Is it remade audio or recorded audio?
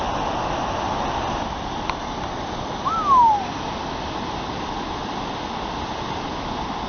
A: recorded